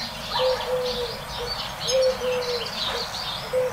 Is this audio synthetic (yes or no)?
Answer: no